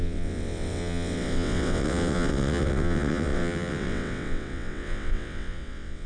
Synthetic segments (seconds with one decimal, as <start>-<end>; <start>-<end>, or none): 0.0-6.1